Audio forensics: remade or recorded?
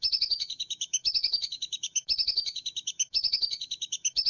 remade